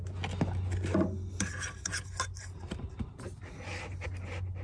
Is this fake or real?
real